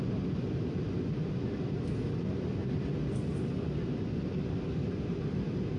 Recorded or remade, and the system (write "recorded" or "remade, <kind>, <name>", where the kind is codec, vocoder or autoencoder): recorded